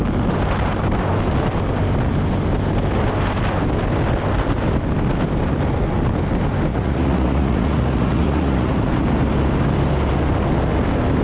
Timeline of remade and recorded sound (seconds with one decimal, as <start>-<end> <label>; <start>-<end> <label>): 0.0-6.7 recorded; 6.7-8.7 remade; 8.7-11.2 recorded